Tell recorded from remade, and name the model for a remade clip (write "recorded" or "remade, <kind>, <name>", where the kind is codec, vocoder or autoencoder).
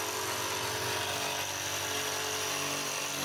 recorded